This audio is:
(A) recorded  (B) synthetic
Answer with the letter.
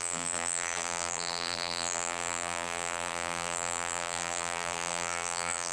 B